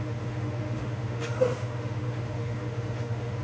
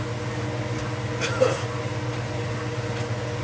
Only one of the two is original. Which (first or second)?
second